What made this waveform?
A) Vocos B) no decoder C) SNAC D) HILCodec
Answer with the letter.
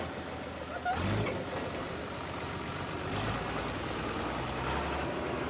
B